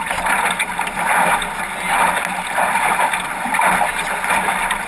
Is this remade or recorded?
recorded